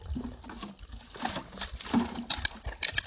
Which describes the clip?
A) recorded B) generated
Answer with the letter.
A